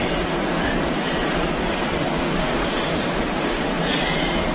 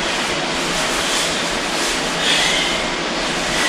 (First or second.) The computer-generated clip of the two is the first